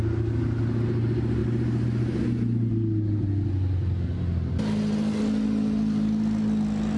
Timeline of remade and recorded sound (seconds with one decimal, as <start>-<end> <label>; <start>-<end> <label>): 0.0-7.0 recorded